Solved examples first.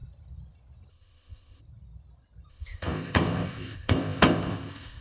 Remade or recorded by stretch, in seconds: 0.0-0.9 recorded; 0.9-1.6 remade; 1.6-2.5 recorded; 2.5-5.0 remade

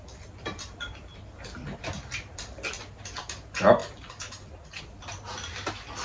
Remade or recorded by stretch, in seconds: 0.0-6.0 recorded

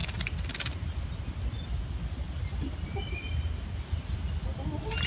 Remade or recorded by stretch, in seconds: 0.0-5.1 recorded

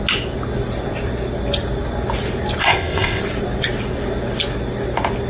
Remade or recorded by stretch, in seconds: 0.0-2.6 recorded; 2.6-3.2 remade; 3.2-5.3 recorded

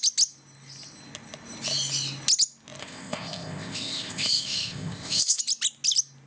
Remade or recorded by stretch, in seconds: 0.0-2.8 recorded; 2.8-5.4 remade; 5.4-6.3 recorded